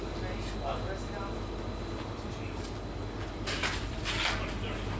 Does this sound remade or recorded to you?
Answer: recorded